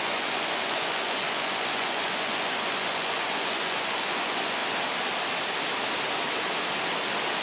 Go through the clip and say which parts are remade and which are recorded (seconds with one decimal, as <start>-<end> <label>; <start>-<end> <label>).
0.0-4.6 remade; 4.6-7.4 recorded